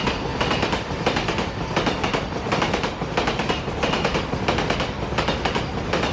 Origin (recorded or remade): recorded